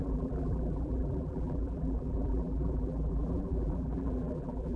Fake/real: fake